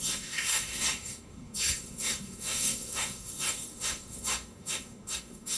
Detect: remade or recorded remade